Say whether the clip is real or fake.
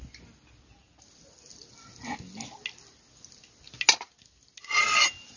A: real